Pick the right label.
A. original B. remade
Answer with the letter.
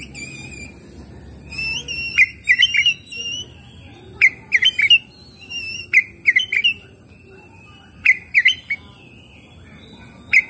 A